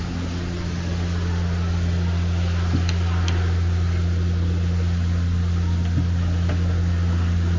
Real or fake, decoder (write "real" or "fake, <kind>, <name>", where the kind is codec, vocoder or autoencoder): real